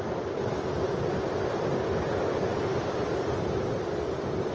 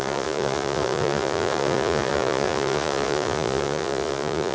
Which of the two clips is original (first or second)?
first